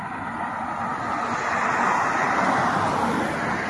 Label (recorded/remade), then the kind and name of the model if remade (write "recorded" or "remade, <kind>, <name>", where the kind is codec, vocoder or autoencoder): recorded